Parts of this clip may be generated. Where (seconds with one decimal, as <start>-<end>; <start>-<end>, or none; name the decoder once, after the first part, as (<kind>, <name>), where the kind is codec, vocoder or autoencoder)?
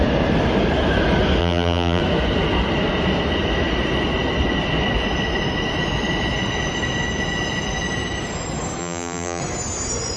1.4-2.0 (vocoder, BigVGAN v2); 8.8-9.4